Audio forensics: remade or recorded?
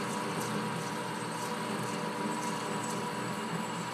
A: remade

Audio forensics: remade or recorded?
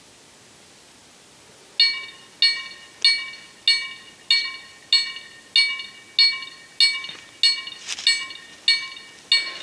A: recorded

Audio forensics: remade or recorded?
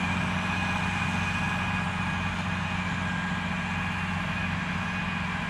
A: recorded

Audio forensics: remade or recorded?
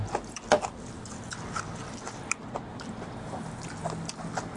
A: recorded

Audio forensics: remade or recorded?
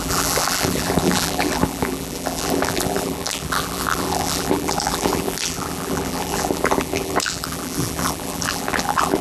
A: remade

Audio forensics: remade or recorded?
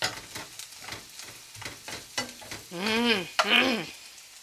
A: recorded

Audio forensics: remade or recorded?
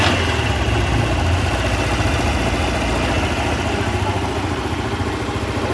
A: recorded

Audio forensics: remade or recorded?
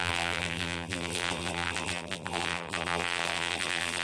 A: remade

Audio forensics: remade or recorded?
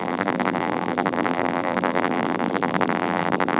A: remade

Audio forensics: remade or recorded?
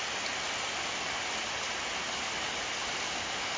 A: remade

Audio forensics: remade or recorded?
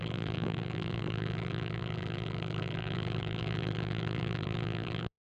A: remade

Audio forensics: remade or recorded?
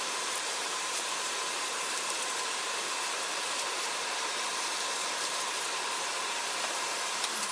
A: remade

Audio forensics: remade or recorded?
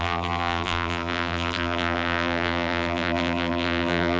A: remade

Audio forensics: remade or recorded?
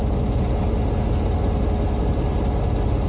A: recorded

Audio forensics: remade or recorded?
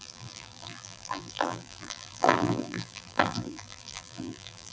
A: remade